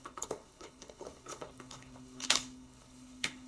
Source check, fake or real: fake